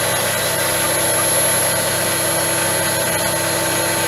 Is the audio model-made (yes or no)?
no